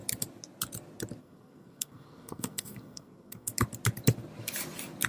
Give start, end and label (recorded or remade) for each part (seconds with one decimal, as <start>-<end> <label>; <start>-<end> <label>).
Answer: 0.0-1.2 recorded; 1.2-3.5 remade; 3.5-5.1 recorded

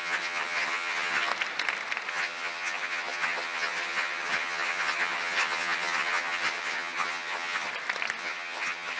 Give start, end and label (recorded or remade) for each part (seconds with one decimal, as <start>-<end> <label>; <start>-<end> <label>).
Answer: 0.0-1.3 remade; 1.3-2.1 recorded; 2.1-7.7 remade; 7.7-8.2 recorded; 8.2-9.0 remade

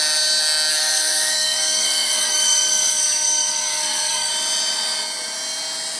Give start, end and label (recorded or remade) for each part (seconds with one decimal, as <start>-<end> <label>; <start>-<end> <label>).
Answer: 0.0-0.7 recorded; 0.7-4.3 remade; 4.3-6.0 recorded

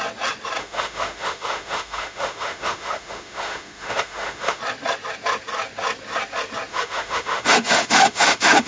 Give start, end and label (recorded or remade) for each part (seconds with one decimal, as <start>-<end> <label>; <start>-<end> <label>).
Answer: 0.0-0.6 recorded; 0.6-4.6 remade; 4.6-6.7 recorded; 6.7-8.7 remade

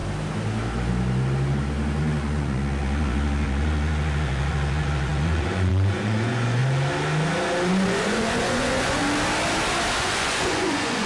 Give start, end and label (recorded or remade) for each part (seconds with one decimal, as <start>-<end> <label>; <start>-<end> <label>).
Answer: 0.0-2.0 recorded; 2.0-6.6 remade; 6.6-7.7 recorded; 7.7-9.0 remade; 9.0-10.0 recorded; 10.0-11.1 remade